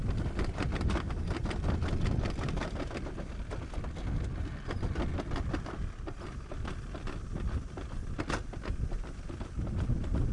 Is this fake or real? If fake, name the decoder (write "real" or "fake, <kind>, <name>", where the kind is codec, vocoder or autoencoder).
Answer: real